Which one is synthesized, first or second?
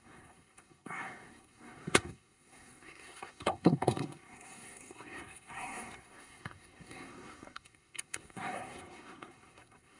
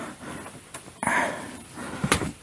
first